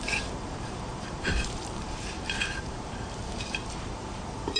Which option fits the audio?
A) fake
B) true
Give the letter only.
A